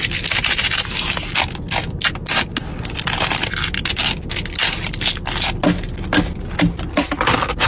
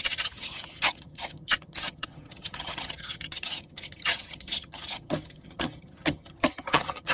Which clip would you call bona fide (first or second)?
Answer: first